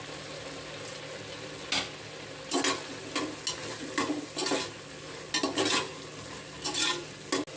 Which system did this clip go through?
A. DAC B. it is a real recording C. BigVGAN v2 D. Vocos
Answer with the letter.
B